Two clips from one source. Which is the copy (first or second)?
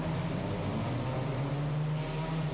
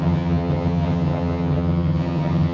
second